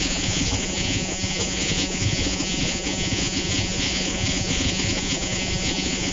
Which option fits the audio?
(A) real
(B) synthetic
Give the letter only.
B